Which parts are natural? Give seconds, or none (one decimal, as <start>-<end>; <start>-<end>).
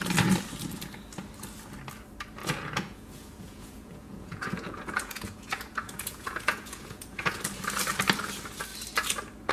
0.0-2.4; 7.4-9.5